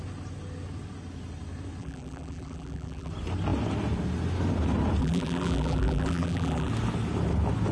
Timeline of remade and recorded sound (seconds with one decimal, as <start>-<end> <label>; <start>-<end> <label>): 0.0-1.8 recorded; 1.8-3.1 remade; 3.1-5.0 recorded; 5.0-6.7 remade; 6.7-7.7 recorded